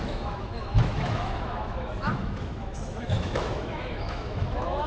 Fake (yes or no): yes